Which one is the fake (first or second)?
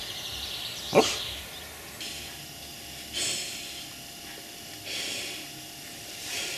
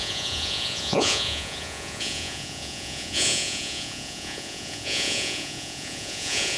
second